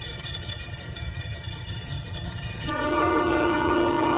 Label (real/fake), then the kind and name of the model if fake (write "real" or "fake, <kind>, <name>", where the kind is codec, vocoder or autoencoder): fake, vocoder, HiFi-GAN